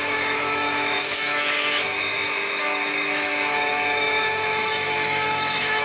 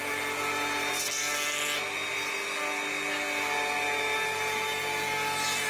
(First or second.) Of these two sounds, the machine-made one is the first